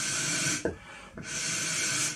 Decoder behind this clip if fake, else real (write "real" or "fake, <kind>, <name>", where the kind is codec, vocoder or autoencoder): real